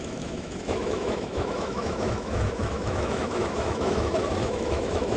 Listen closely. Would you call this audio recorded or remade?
remade